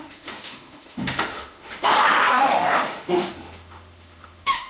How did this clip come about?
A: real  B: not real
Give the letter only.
B